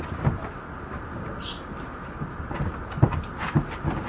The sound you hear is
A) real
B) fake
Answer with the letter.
A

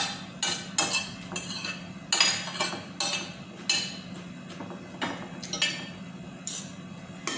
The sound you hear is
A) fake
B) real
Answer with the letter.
B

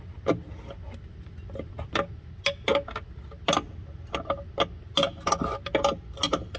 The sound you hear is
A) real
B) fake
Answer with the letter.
A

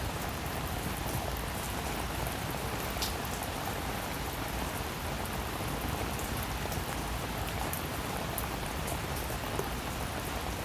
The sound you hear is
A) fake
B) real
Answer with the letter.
B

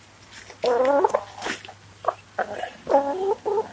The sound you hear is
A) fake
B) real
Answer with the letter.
B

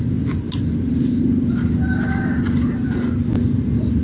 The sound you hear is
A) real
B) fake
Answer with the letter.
A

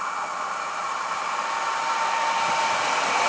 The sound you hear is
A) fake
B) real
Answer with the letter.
B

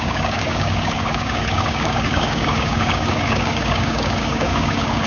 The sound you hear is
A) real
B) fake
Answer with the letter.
B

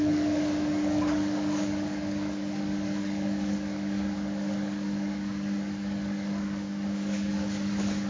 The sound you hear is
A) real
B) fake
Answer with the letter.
B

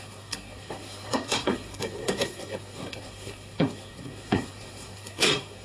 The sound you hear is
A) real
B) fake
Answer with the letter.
B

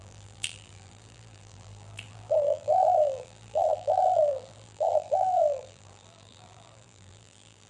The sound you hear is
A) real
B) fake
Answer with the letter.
B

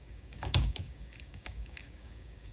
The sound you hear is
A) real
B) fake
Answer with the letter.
B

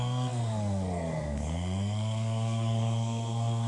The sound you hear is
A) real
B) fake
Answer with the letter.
B